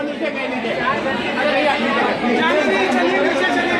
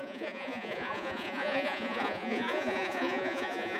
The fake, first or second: second